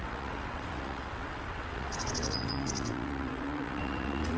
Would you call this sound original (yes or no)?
no